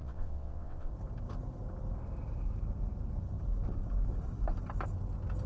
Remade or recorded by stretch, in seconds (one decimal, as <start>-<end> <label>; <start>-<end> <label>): 0.0-0.9 remade; 0.9-5.5 recorded